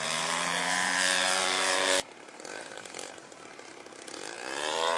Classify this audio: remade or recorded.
remade